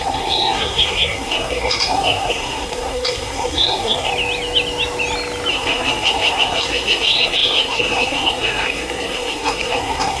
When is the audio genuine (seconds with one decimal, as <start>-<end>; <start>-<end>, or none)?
4.1-5.5